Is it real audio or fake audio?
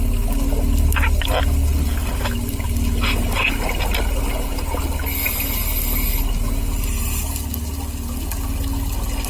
real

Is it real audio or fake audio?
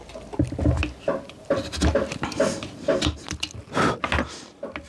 real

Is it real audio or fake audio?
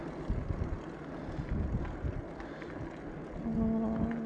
real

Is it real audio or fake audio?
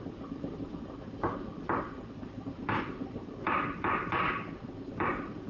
fake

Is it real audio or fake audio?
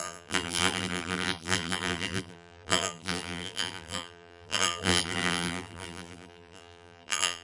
fake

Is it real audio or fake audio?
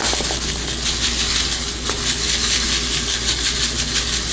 real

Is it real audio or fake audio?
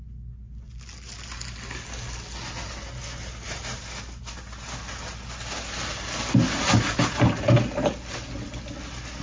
real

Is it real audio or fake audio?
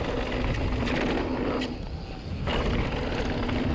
real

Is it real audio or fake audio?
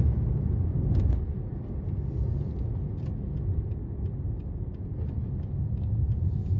real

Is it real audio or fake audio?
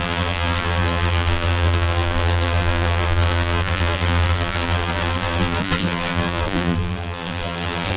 fake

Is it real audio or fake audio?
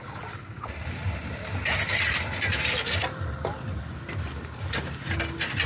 real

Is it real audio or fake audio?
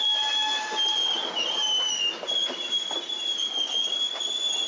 real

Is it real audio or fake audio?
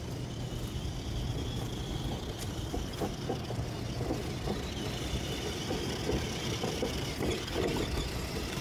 fake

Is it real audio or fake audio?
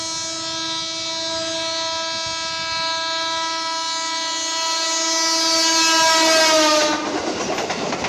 real